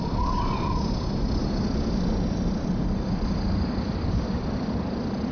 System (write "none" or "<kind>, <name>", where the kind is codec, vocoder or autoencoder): vocoder, BigVGAN v2